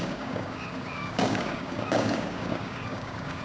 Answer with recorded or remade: remade